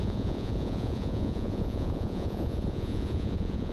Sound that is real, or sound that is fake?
fake